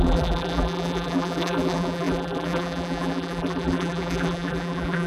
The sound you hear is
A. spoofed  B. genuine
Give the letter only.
A